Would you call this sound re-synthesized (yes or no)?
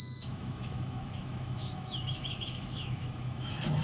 yes